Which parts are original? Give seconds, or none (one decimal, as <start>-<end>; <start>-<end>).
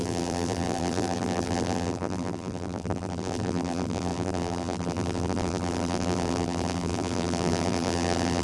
none